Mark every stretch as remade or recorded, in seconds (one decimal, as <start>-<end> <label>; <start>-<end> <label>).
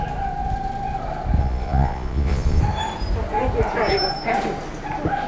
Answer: 0.0-1.4 recorded; 1.4-2.6 remade; 2.6-5.3 recorded